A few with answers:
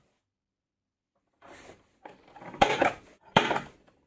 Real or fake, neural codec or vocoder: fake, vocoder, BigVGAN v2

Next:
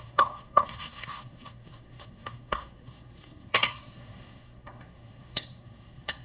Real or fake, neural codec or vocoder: fake, codec, SNAC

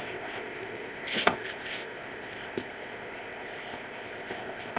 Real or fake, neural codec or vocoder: fake, codec, ZipCodec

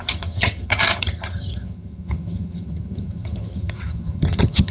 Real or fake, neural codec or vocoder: fake, vocoder, HiFi-GAN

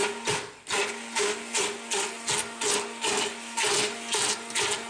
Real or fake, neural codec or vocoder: real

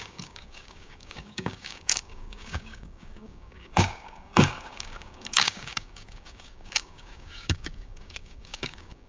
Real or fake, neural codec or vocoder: fake, codec, DAC